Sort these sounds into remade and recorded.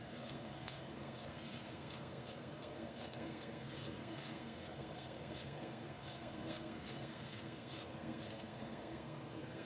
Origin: remade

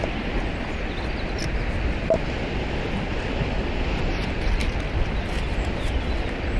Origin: recorded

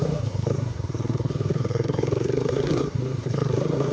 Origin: remade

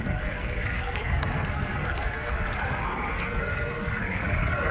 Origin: remade